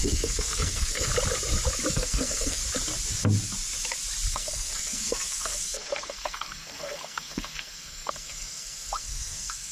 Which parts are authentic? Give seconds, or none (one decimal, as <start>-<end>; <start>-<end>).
1.1-1.9; 2.6-4.3